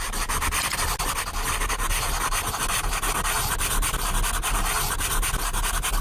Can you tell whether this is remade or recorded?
recorded